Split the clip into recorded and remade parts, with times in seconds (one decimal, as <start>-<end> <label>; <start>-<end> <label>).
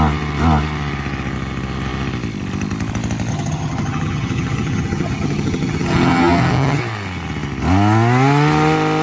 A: 0.0-3.3 recorded; 3.3-6.8 remade; 6.8-9.0 recorded